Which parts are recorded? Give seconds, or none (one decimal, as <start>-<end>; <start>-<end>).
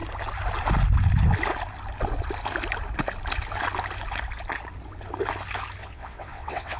0.0-5.8